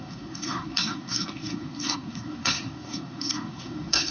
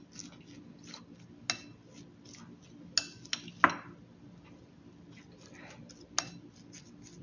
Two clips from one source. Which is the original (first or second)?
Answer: second